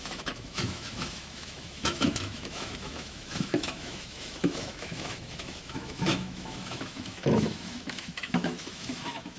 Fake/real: fake